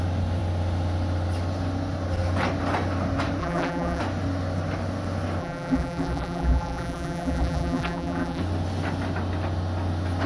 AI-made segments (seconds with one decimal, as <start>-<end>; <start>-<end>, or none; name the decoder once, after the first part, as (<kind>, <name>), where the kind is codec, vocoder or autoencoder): 3.4-4.0 (vocoder, BigVGAN v2); 5.4-8.4